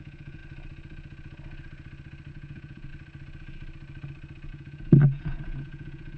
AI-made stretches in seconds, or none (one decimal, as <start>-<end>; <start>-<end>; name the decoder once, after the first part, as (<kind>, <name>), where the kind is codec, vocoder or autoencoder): 0.0-0.4 (vocoder, Vocos); 2.3-2.9; 4.5-6.2